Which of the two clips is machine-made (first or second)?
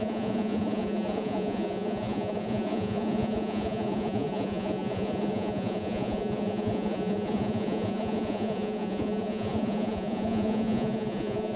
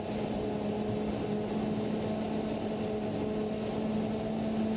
first